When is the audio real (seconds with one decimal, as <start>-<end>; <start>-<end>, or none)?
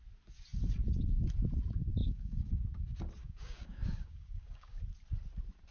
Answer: 0.0-2.0; 2.6-3.2; 4.8-5.7